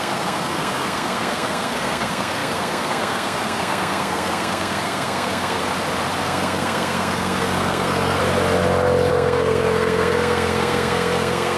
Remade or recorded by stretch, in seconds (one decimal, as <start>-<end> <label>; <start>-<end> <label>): 0.0-5.6 remade; 5.6-6.2 recorded; 6.2-8.2 remade; 8.2-9.1 recorded; 9.1-11.6 remade